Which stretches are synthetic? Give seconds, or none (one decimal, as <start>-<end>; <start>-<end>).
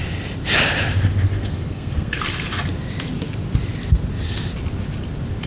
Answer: 1.3-2.2